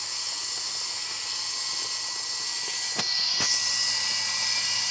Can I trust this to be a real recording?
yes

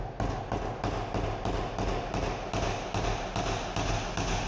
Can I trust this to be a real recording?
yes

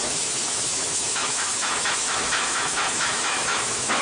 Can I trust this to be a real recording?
no